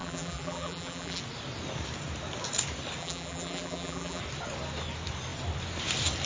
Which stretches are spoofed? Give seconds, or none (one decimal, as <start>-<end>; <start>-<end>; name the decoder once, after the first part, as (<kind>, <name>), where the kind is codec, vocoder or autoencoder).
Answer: 0.0-1.2 (vocoder, BigVGAN v2); 3.0-4.2